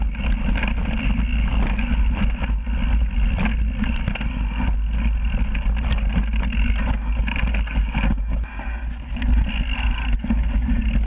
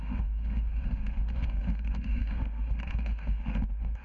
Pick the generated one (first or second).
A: second